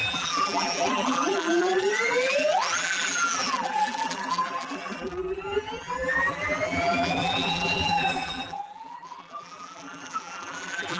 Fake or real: fake